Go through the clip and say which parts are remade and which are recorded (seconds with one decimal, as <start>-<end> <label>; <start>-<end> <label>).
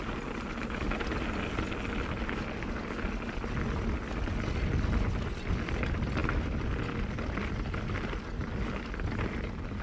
0.0-9.8 recorded